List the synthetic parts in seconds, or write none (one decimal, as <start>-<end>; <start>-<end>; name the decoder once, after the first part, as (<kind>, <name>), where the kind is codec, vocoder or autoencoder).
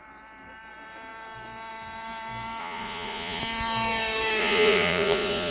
2.6-3.4 (vocoder, Vocos); 4.4-5.5